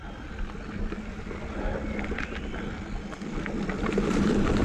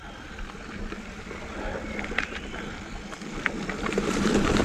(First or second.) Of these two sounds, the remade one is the second